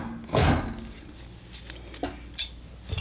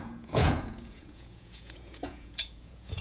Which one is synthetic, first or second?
second